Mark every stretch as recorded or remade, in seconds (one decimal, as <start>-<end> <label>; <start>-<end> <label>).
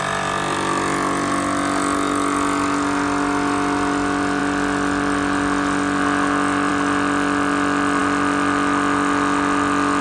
0.0-10.0 recorded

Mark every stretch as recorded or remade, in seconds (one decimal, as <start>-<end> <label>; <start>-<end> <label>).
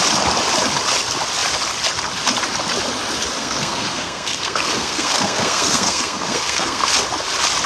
0.0-3.4 recorded; 3.4-6.9 remade; 6.9-7.7 recorded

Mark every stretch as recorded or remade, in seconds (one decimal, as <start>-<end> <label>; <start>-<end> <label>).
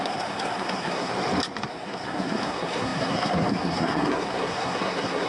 0.0-1.1 remade; 1.1-1.7 recorded; 1.7-5.3 remade